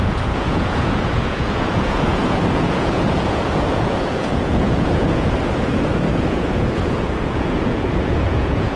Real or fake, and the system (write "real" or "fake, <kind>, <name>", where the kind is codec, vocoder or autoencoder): fake, vocoder, Vocos